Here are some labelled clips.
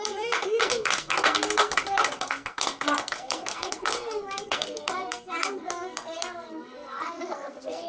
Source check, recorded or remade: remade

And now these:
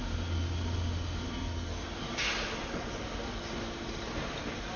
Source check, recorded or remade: recorded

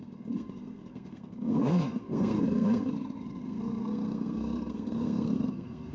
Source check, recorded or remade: remade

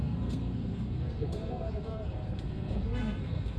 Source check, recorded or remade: remade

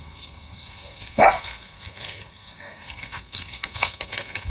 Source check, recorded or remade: remade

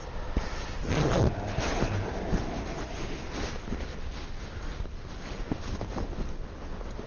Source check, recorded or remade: recorded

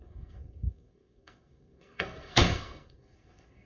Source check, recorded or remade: remade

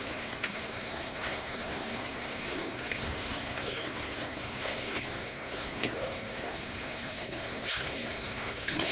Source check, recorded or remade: remade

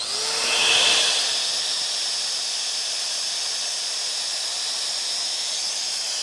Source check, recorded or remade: recorded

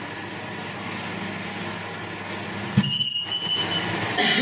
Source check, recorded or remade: recorded